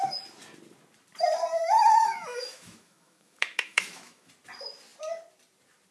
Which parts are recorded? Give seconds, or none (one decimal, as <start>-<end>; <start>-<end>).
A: 0.0-1.6; 4.3-5.9